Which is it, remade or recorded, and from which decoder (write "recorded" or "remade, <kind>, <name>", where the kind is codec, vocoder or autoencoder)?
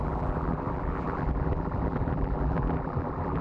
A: remade, vocoder, BigVGAN v2